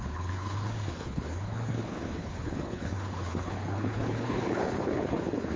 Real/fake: fake